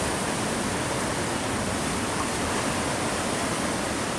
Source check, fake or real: real